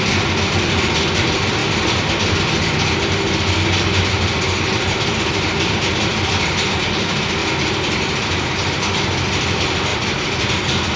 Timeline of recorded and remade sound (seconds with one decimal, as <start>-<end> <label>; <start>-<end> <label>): 0.0-11.0 remade